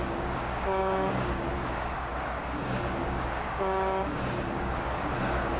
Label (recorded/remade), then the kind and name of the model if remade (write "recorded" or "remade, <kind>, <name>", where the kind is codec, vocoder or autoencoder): remade, codec, DAC